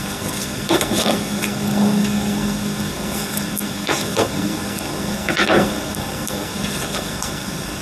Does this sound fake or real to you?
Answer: fake